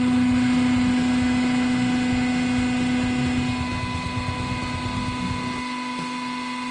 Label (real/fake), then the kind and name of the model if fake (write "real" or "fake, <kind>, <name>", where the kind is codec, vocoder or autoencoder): real